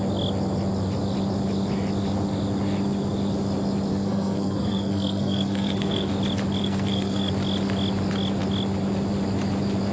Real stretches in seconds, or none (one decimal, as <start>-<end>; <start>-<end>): 0.0-3.9; 6.1-6.6; 7.3-9.9